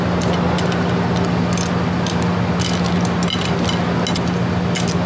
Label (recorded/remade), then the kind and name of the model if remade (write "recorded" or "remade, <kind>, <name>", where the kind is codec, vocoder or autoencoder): recorded